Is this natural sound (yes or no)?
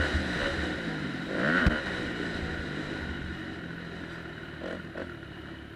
yes